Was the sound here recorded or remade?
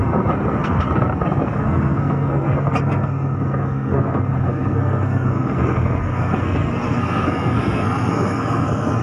remade